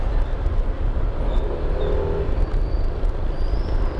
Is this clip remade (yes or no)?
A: no